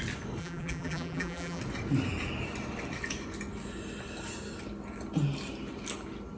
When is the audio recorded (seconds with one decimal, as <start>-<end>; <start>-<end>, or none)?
0.0-0.4; 1.6-6.4